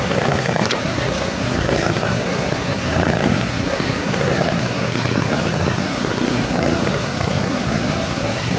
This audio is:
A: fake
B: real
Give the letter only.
A